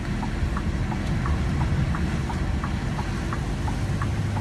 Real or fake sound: real